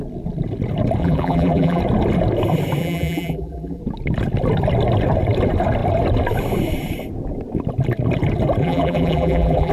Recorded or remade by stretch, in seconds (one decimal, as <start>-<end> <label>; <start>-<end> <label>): 0.0-1.0 recorded; 1.0-1.8 remade; 1.8-2.8 recorded; 2.8-3.8 remade; 3.8-8.6 recorded; 8.6-9.7 remade